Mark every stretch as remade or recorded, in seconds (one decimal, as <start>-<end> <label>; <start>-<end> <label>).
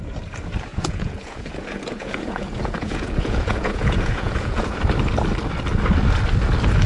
0.0-0.7 recorded; 0.7-4.8 remade; 4.8-6.9 recorded